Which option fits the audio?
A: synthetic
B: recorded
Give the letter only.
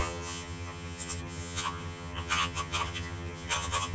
A